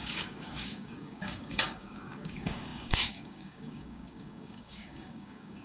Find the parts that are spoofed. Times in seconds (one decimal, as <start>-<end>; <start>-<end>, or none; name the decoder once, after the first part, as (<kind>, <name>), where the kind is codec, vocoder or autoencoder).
0.0-5.6 (codec, DAC)